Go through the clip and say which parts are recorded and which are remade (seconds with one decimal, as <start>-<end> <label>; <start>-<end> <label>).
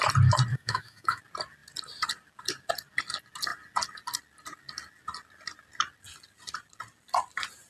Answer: 0.0-0.5 recorded; 0.5-1.2 remade; 1.2-7.7 recorded